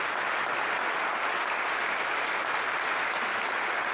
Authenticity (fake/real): real